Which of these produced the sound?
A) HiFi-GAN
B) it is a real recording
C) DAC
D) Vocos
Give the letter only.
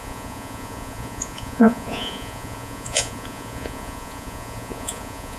D